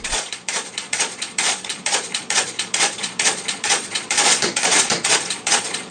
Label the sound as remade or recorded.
remade